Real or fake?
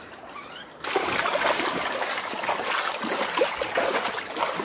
real